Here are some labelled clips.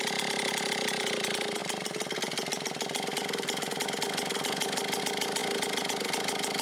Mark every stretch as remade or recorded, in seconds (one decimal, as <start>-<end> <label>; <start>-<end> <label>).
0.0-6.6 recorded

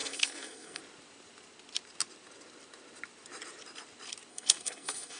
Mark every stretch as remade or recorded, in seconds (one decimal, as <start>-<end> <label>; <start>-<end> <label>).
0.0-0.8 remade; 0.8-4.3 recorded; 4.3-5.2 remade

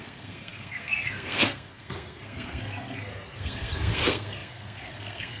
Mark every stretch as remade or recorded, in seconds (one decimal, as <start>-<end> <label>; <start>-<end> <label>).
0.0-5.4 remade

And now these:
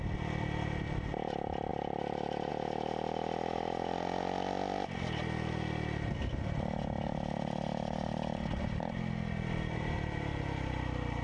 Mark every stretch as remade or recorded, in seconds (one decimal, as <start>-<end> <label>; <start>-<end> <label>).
0.0-11.2 recorded